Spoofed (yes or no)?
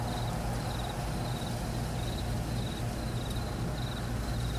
no